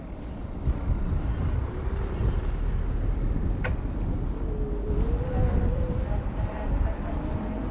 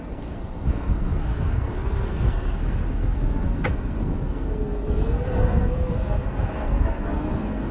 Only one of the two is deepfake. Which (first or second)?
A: second